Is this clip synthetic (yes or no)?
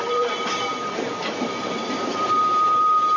yes